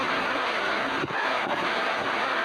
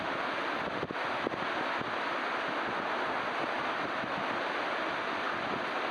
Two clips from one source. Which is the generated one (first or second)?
first